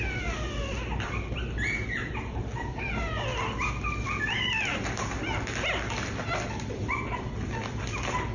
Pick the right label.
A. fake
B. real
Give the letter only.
B